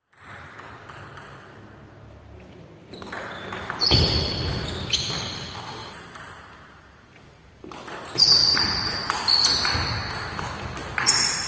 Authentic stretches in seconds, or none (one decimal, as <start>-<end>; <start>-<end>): 0.0-5.8; 7.5-8.4; 9.7-10.8